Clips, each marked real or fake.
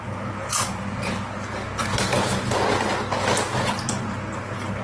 real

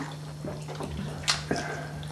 real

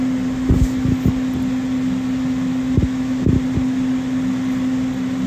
real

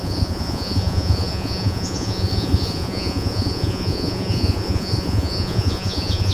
fake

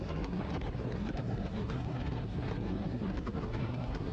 fake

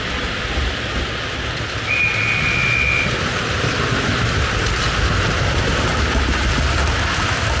real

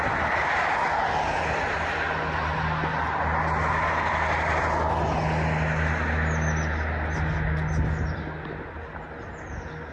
real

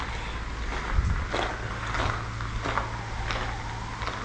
real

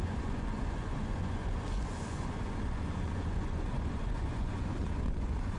fake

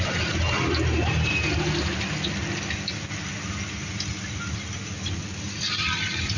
real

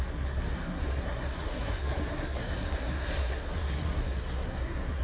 fake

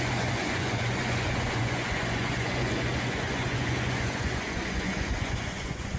fake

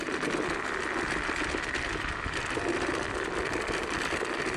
real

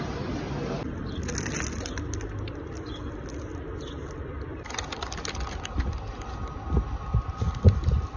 real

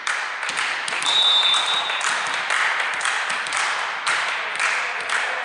fake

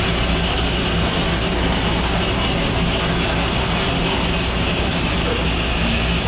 real